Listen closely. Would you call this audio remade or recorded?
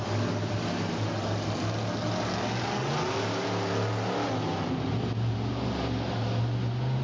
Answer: recorded